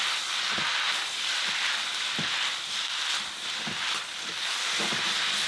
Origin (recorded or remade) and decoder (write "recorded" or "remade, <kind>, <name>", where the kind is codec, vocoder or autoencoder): recorded